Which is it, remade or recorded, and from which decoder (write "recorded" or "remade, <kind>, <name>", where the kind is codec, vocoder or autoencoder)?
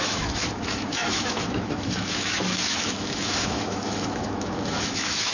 remade, autoencoder, DAC-VAE